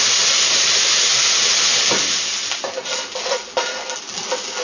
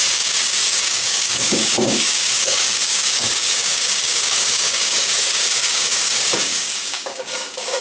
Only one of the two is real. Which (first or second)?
first